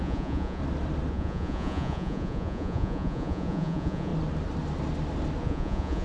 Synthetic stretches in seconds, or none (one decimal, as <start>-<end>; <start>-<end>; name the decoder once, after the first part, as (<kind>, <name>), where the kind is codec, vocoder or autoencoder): 0.0-0.6 (vocoder, Vocos); 1.1-4.1; 5.4-6.0